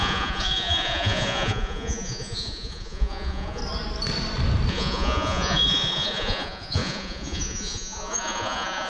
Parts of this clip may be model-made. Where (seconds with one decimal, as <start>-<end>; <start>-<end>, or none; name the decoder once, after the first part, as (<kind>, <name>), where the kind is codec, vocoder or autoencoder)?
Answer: 0.0-3.6 (vocoder, Vocos); 4.7-8.9